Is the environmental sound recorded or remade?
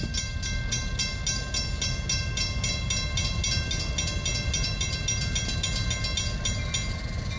recorded